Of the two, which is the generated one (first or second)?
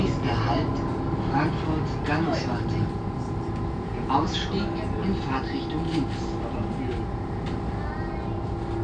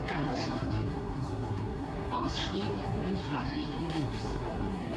second